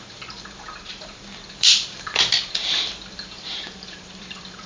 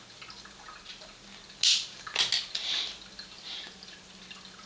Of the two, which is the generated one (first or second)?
first